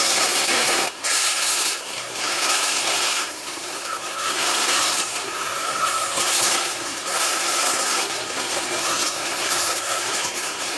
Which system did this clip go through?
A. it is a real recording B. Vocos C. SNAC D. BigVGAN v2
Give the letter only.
C